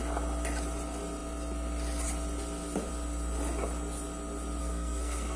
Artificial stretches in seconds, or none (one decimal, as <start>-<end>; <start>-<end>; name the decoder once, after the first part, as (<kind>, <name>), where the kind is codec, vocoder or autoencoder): 4.6-5.4 (codec, SNAC)